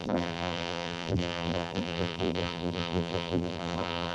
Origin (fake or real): fake